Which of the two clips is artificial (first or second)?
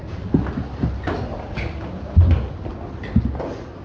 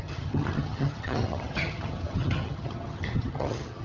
second